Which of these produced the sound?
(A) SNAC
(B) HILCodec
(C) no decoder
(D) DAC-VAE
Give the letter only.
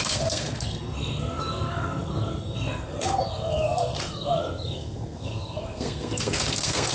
A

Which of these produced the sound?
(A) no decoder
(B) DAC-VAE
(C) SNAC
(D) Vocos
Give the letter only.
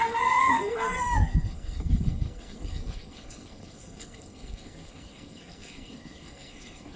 C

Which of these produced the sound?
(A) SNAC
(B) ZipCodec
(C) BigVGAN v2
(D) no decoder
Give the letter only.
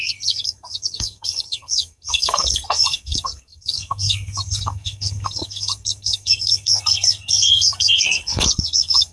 A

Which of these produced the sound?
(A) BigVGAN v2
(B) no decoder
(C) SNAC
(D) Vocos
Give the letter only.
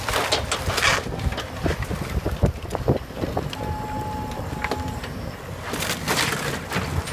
B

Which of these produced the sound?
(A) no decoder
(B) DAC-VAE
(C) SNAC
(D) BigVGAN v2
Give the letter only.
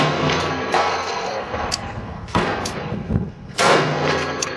C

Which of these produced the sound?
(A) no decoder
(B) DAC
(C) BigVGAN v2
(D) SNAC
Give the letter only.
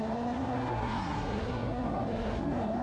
D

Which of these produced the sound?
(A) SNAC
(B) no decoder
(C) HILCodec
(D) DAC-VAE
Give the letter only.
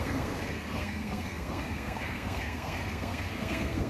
A